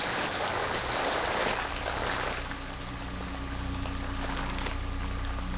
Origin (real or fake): real